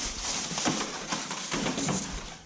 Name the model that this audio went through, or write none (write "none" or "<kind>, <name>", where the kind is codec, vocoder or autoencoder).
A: vocoder, BigVGAN v2